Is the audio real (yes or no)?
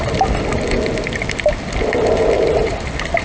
yes